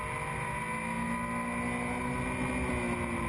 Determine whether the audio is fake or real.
real